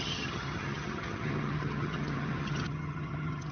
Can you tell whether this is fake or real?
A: fake